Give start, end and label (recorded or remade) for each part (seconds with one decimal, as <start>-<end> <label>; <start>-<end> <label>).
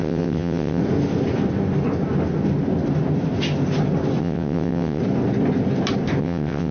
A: 0.0-0.8 remade; 0.8-4.2 recorded; 4.2-5.0 remade; 5.0-6.2 recorded; 6.2-6.7 remade